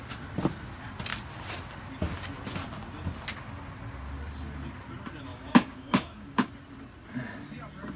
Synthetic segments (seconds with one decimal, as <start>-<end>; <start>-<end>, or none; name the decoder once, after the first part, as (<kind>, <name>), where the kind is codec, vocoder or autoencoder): 5.3-6.5 (codec, DAC)